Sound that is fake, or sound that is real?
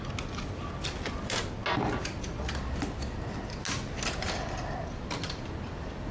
real